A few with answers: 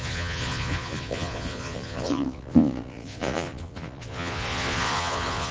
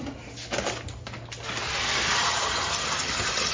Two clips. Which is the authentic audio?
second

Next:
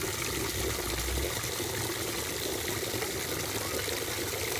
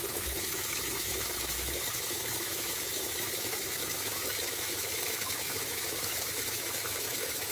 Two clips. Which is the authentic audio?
first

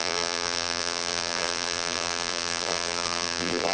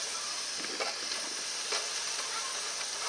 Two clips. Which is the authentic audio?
second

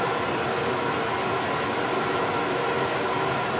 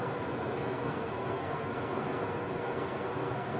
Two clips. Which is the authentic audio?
first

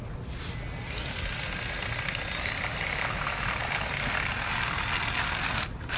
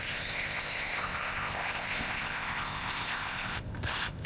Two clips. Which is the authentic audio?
first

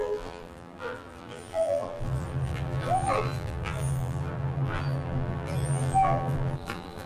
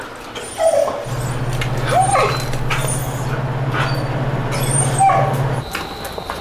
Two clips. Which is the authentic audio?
second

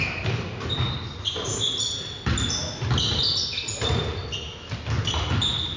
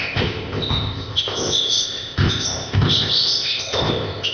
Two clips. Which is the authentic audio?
first